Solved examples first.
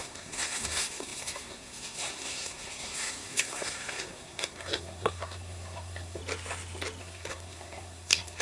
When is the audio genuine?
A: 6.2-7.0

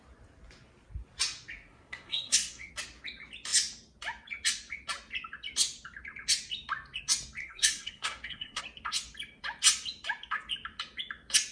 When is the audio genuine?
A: 0.0-1.7; 2.7-7.4; 8.6-11.5

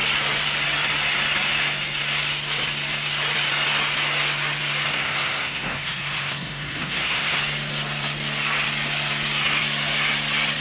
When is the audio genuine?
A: 0.0-4.9; 7.4-10.6

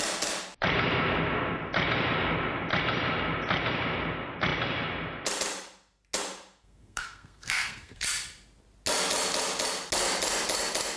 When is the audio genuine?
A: 0.0-6.6; 8.0-11.0